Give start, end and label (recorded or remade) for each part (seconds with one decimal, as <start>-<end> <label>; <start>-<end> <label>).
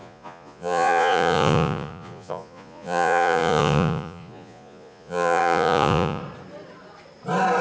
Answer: 0.0-6.2 remade; 6.2-7.6 recorded